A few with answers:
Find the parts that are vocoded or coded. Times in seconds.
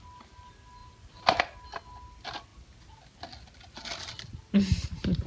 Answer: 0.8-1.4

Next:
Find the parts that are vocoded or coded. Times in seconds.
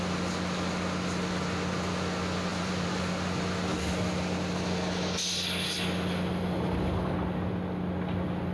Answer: 2.5-3.0